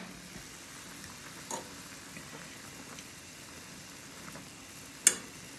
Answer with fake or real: real